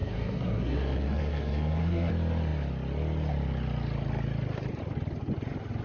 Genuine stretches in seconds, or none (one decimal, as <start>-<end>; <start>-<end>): 2.1-5.8